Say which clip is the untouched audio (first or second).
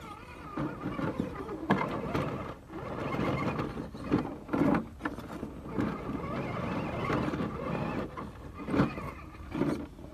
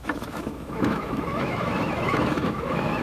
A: first